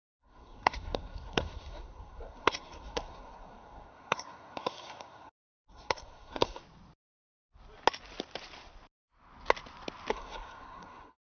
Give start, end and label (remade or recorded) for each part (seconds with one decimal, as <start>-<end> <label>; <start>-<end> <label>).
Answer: 0.0-6.6 remade; 6.6-10.1 recorded; 10.1-11.3 remade